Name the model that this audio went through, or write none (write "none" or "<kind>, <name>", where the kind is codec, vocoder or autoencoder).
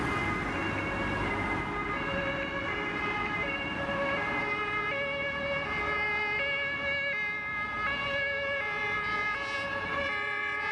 none